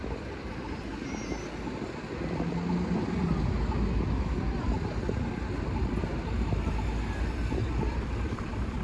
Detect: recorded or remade recorded